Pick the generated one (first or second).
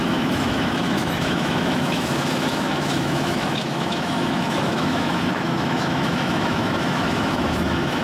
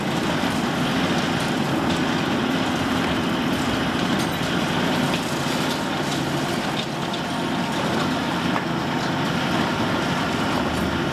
first